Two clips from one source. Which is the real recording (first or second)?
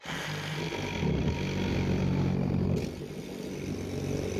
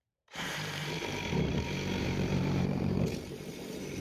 first